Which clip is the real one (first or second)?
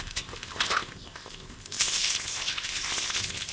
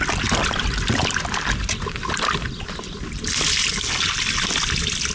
second